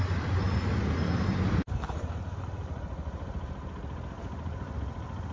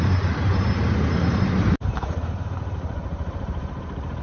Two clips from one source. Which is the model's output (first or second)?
second